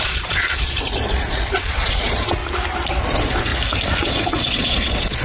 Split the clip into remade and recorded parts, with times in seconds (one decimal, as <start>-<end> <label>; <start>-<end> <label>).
0.0-2.4 remade; 2.4-3.0 recorded; 3.0-3.5 remade; 3.5-4.0 recorded; 4.0-5.2 remade